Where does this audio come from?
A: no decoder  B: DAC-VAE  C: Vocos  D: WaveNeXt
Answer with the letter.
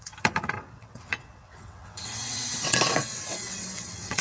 D